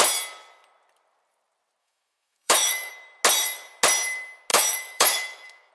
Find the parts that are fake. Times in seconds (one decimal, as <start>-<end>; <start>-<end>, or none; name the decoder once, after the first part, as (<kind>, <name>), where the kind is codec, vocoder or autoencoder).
1.8-2.9 (autoencoder, DAC-VAE); 4.5-5.7